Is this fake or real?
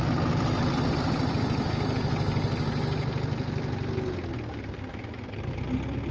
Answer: real